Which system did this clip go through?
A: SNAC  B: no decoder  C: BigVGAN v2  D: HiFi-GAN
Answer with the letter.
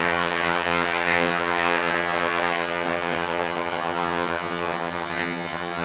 D